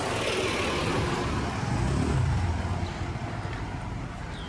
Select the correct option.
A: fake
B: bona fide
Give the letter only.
B